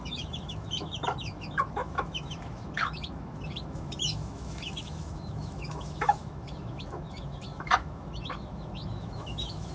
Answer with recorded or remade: remade